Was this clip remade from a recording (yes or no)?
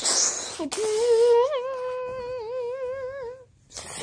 no